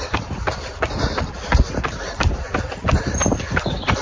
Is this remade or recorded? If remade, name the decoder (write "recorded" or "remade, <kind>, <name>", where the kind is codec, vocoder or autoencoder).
remade, vocoder, BigVGAN v2